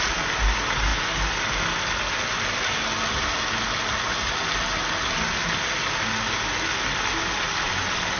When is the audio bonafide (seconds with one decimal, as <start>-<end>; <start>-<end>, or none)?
0.0-8.2